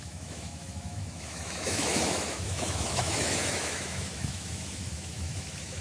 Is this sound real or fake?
fake